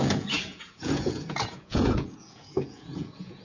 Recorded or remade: remade